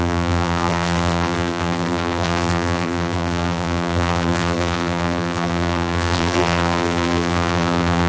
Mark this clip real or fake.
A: fake